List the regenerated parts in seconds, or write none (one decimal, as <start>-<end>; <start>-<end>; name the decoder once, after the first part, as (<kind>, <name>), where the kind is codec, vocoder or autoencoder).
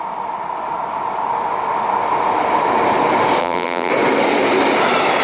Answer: 3.4-3.9 (vocoder, BigVGAN v2)